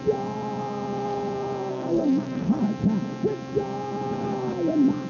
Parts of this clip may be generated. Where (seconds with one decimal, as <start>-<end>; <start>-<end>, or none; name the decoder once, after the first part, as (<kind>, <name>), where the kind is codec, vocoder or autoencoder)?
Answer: 1.7-2.6 (codec, SNAC)